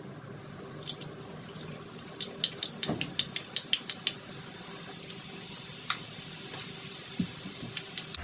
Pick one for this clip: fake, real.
real